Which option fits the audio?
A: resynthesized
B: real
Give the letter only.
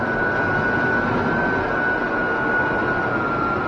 B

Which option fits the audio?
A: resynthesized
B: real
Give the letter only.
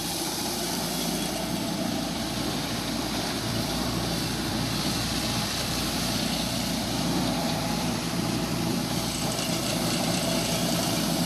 A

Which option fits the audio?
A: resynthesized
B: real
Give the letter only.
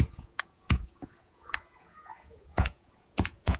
A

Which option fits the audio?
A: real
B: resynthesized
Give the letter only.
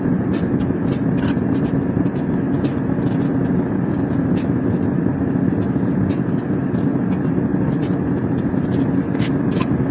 A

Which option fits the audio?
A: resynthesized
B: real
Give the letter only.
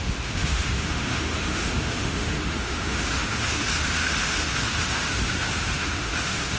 A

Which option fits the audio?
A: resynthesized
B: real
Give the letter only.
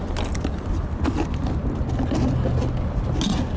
B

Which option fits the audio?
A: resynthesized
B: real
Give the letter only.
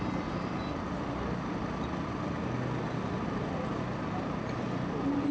B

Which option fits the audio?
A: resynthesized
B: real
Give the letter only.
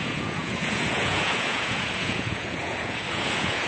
A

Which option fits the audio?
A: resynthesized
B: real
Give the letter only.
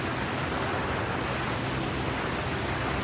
B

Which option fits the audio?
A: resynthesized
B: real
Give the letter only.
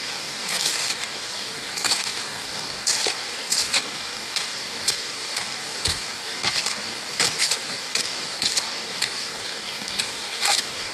A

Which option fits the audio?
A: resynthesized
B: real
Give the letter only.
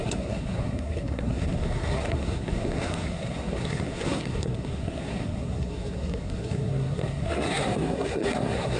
A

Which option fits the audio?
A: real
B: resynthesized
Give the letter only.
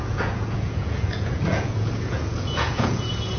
B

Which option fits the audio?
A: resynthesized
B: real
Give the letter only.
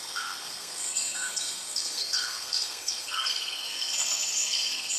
A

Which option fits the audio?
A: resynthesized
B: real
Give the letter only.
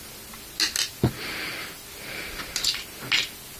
B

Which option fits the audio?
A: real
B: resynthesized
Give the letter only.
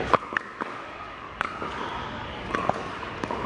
B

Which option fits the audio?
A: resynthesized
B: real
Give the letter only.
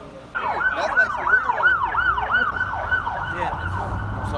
B